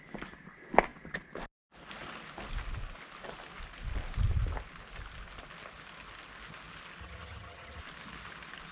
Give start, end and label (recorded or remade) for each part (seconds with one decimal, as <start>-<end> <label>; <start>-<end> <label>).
0.0-7.0 recorded; 7.0-7.8 remade; 7.8-8.7 recorded